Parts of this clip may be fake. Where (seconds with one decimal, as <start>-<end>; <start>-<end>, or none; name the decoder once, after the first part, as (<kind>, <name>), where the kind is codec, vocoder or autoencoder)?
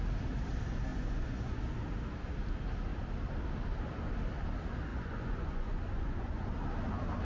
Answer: 0.9-1.6 (vocoder, Vocos); 4.9-6.5